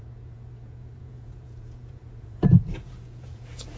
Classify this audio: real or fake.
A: fake